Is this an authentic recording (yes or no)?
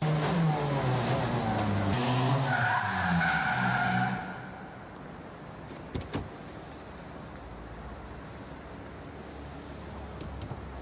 yes